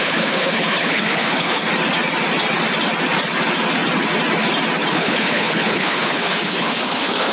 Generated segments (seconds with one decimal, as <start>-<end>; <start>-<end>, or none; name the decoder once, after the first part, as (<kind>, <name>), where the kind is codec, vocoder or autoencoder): 0.0-1.6 (codec, HILCodec); 4.9-7.3